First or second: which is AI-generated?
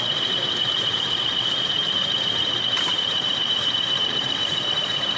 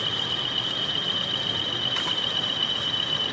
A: first